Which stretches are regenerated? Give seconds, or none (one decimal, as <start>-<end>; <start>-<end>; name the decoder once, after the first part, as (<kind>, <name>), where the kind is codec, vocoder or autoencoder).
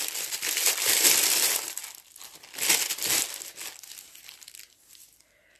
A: 0.0-1.8 (vocoder, BigVGAN v2); 4.9-5.6